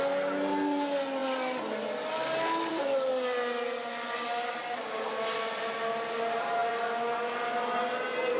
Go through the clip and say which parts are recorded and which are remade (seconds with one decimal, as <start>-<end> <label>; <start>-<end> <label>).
0.0-8.4 recorded